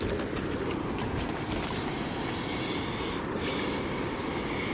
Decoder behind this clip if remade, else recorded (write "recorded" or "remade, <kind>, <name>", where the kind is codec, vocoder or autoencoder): recorded